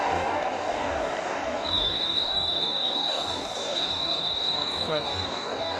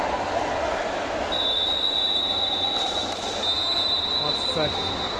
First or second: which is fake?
first